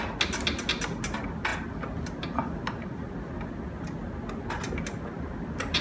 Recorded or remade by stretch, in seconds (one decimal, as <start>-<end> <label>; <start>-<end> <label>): 0.0-5.8 recorded